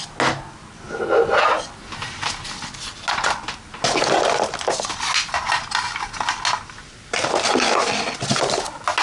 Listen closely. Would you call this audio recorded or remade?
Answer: recorded